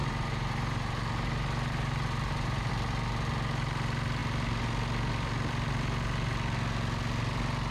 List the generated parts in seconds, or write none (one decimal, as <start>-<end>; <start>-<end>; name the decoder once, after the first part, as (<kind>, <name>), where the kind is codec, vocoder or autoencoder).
0.0-2.7 (vocoder, BigVGAN v2)